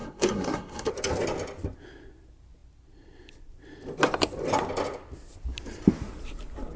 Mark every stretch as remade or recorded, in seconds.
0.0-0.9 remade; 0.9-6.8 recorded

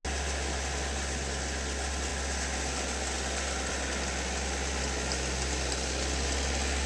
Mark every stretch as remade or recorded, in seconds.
0.0-6.9 recorded

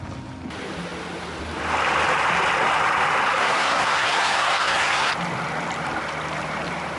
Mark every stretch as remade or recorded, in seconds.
0.0-3.4 recorded; 3.4-5.1 remade; 5.1-7.0 recorded

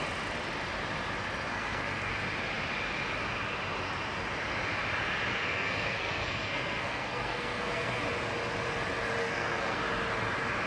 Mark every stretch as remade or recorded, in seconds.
0.0-1.5 recorded; 1.5-2.1 remade; 2.1-5.3 recorded; 5.3-8.0 remade; 8.0-9.2 recorded; 9.2-9.8 remade; 9.8-10.7 recorded

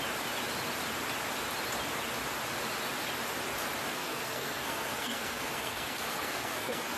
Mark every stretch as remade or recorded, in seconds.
0.0-3.9 recorded; 3.9-7.0 remade

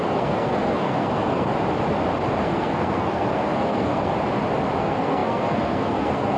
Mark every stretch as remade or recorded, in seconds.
0.0-1.5 remade; 1.5-2.4 recorded; 2.4-4.1 remade; 4.1-4.8 recorded; 4.8-6.4 remade

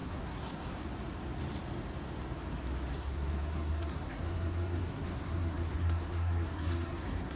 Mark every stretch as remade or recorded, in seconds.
0.0-0.8 remade; 0.8-2.9 recorded; 2.9-7.4 remade

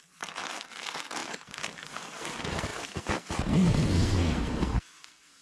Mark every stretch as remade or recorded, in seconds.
0.0-5.4 remade